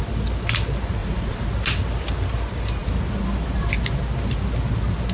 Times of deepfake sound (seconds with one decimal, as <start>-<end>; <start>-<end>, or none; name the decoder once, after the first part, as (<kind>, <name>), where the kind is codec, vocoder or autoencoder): 1.0-1.5 (vocoder, Vocos)

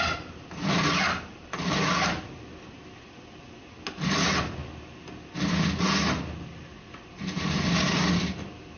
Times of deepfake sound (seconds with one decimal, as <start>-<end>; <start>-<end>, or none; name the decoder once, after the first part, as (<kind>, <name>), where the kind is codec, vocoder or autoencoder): none

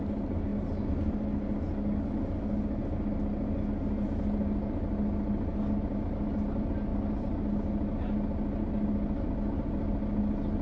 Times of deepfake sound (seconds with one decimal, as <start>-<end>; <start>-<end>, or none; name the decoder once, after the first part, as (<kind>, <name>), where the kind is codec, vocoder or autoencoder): none

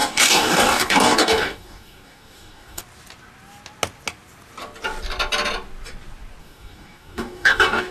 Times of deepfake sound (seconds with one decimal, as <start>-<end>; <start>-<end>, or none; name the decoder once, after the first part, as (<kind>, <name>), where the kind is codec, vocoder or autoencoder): 0.0-2.8 (codec, DAC); 6.4-7.9

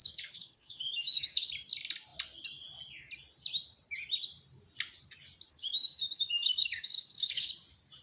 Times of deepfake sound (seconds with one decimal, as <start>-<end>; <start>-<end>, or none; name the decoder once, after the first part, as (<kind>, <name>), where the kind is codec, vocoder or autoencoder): 0.0-1.5 (codec, DAC); 5.5-7.5

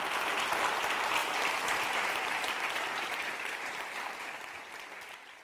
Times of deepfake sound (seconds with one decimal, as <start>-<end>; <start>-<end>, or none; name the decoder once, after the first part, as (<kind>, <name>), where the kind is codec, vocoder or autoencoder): 1.2-4.2 (vocoder, BigVGAN v2)

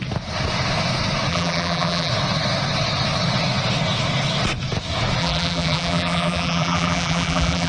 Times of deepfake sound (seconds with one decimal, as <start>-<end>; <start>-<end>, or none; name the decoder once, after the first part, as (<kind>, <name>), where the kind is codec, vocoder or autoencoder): 1.3-2.1 (vocoder, BigVGAN v2); 5.2-7.7

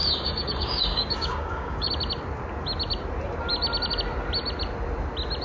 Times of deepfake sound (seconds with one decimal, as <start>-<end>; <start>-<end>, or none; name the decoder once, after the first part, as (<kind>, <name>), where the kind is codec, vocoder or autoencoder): 0.0-1.9 (codec, DAC)